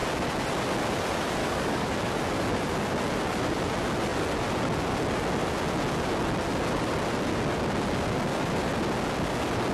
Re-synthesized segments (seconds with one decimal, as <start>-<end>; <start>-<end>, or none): 1.4-2.1